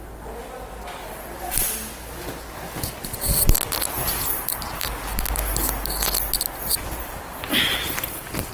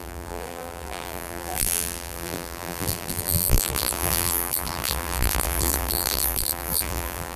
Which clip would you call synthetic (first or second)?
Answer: second